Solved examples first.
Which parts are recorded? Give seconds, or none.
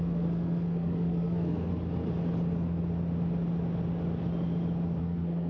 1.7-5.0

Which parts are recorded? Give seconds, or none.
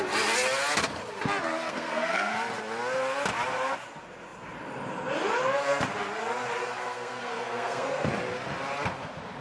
0.0-1.7; 2.3-6.6; 8.1-9.4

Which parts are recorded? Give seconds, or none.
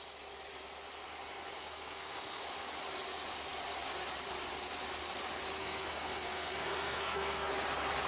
0.0-1.6; 2.4-5.6; 7.5-8.1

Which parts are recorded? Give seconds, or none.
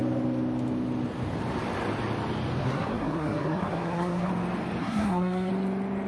0.0-2.6; 4.3-4.8; 5.5-6.1